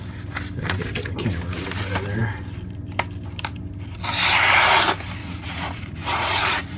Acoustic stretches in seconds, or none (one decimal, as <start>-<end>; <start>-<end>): 0.0-5.2